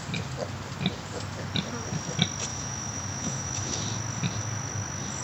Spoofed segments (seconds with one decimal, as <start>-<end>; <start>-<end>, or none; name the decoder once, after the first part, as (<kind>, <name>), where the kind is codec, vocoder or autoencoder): 2.5-3.8 (autoencoder, DAC-VAE)